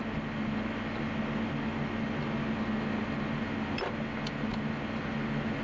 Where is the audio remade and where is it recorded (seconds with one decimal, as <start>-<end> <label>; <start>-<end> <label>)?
0.0-5.6 recorded